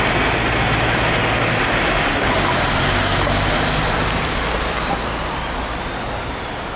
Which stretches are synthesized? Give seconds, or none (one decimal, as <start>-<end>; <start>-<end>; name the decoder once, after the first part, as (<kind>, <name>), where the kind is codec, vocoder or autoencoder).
none